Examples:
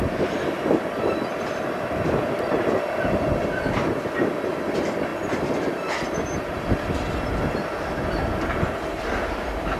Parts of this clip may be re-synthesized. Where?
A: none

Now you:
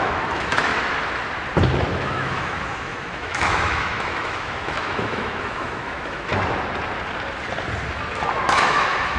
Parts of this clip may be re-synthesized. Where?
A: 0.0-0.7; 1.9-6.3; 8.5-9.2

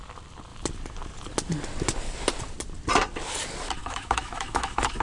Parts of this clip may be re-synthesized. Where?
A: 3.8-5.0

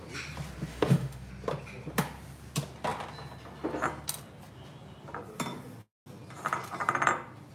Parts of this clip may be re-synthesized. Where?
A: 0.7-1.3

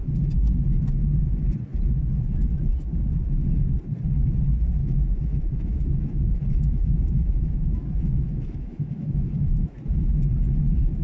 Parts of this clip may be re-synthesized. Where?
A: 4.8-9.8